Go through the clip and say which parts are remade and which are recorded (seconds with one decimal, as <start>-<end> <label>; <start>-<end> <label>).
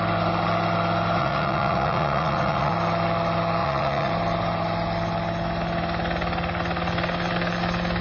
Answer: 0.0-1.2 recorded; 1.2-2.7 remade; 2.7-3.6 recorded; 3.6-4.1 remade; 4.1-8.0 recorded